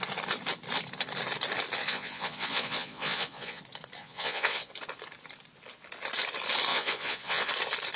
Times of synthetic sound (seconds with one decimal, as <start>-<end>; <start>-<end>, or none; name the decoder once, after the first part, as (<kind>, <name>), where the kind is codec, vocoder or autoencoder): 1.8-3.6 (vocoder, Vocos); 4.0-4.7; 6.7-7.5